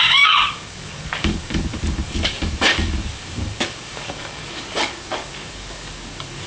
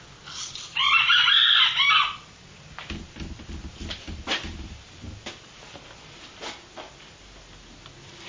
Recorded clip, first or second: second